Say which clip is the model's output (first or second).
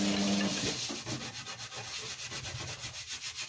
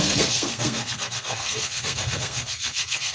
second